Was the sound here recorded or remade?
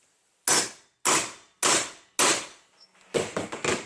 recorded